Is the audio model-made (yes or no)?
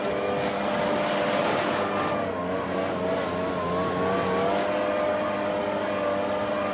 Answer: no